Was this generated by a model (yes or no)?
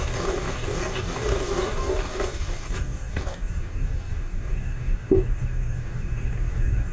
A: yes